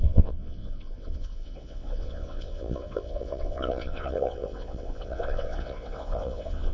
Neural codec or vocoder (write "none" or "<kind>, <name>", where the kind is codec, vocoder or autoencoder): vocoder, WaveNeXt